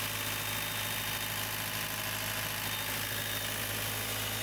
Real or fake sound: real